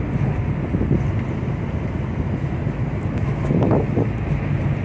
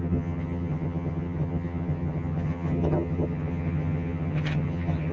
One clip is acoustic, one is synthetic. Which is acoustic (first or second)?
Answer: first